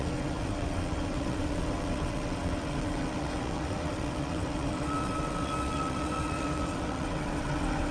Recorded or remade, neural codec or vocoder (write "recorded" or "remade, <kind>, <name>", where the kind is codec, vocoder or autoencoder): remade, vocoder, WaveNeXt